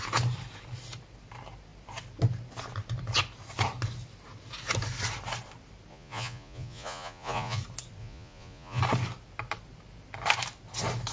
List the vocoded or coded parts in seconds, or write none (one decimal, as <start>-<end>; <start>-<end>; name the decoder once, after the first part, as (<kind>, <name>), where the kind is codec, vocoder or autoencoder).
5.9-7.6 (vocoder, Vocos); 8.0-8.8